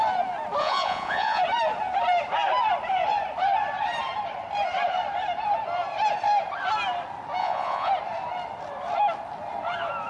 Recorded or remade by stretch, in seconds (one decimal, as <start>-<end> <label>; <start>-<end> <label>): 0.0-0.6 recorded; 0.6-1.4 remade; 1.4-7.4 recorded; 7.4-7.9 remade; 7.9-10.1 recorded